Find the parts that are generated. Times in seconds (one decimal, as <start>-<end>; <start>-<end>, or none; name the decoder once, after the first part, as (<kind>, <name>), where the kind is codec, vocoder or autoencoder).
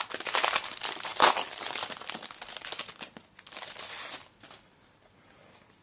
none